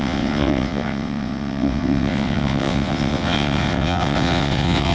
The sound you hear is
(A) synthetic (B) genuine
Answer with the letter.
A